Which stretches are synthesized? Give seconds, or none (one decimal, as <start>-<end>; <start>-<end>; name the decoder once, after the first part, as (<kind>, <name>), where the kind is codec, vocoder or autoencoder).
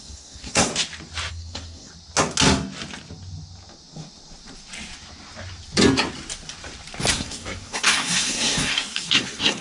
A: 0.0-0.7 (codec, SNAC); 1.3-1.9; 7.1-9.6